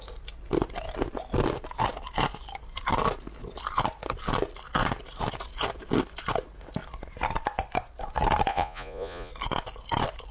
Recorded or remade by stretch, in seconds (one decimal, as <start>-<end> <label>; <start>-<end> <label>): 0.0-8.5 recorded; 8.5-9.3 remade; 9.3-10.3 recorded